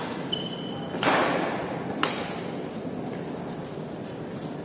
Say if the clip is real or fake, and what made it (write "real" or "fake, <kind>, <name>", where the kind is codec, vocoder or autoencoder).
real